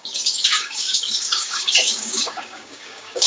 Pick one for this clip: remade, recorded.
remade